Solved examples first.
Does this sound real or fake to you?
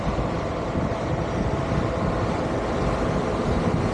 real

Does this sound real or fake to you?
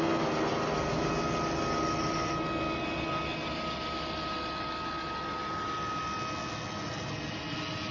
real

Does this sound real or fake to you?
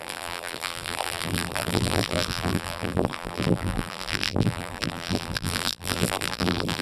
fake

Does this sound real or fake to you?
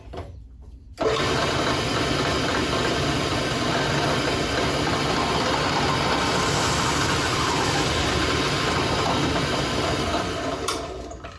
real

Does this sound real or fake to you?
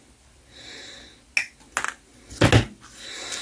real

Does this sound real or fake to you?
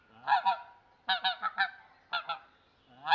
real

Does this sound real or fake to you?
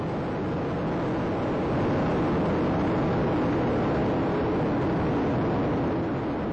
real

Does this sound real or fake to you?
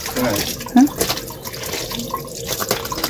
real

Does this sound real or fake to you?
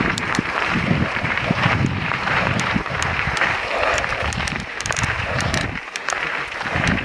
fake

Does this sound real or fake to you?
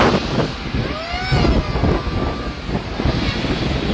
real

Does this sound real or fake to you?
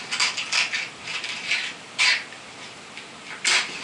real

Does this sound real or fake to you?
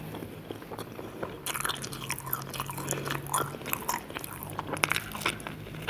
real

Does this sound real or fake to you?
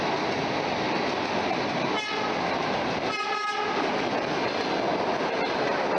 real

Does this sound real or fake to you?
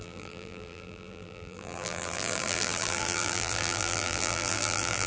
fake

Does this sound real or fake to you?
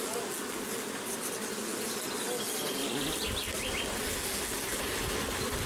real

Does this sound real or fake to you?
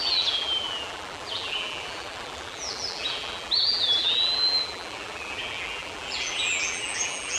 fake